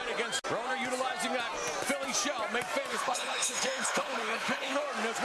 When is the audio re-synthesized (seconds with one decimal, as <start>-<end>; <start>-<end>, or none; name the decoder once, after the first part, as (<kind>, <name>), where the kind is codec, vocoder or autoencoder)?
2.9-4.8 (codec, HILCodec)